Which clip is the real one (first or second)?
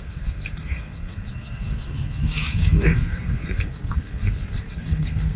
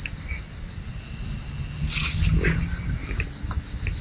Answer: second